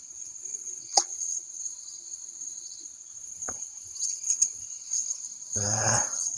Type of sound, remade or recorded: remade